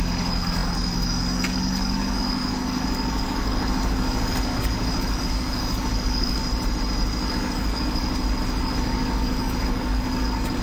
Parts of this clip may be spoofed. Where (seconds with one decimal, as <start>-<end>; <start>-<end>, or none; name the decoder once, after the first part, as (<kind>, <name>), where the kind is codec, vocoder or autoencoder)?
0.0-6.4 (codec, DAC); 7.3-8.0; 8.6-10.6